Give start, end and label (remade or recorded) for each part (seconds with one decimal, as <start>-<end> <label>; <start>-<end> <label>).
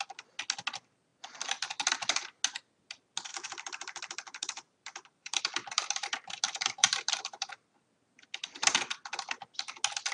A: 0.0-3.3 recorded; 3.3-5.4 remade; 5.4-6.8 recorded; 6.8-7.5 remade; 7.5-10.1 recorded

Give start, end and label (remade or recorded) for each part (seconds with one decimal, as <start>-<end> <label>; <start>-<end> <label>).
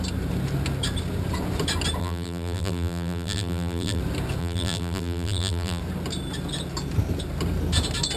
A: 0.0-2.0 recorded; 2.0-4.0 remade; 4.0-4.4 recorded; 4.4-5.8 remade; 5.8-8.2 recorded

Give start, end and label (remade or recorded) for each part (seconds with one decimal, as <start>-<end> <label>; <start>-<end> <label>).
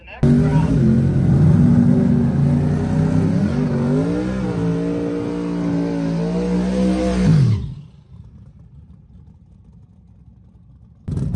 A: 0.0-0.5 recorded; 0.5-1.8 remade; 1.8-7.3 recorded; 7.3-9.9 remade; 9.9-11.4 recorded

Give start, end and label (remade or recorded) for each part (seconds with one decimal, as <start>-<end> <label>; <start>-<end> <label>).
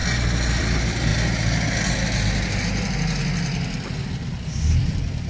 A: 0.0-0.6 recorded; 0.6-1.1 remade; 1.1-4.3 recorded; 4.3-5.3 remade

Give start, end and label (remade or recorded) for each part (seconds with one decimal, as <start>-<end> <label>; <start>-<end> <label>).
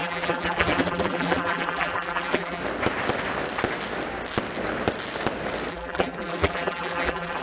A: 0.0-2.6 remade; 2.6-5.7 recorded; 5.7-7.4 remade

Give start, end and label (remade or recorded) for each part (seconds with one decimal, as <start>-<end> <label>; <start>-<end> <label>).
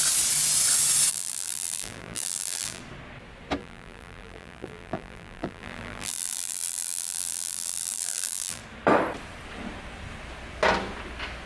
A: 0.0-1.1 recorded; 1.1-2.8 remade; 2.8-3.6 recorded; 3.6-8.6 remade; 8.6-11.5 recorded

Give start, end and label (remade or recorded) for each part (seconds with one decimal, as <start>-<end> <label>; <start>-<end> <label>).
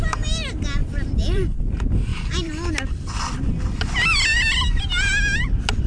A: 0.0-0.8 recorded; 0.8-1.6 remade; 1.6-2.1 recorded; 2.1-2.7 remade; 2.7-5.9 recorded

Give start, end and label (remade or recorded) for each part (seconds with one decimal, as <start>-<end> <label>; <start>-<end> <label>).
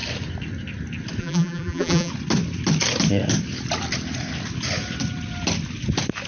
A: 0.0-1.2 recorded; 1.2-2.1 remade; 2.1-6.3 recorded